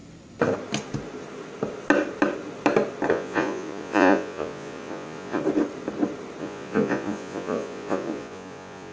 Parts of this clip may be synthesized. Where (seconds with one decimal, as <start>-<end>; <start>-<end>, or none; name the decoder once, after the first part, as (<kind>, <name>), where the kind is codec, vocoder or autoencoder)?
3.1-5.4 (vocoder, Vocos); 6.4-8.9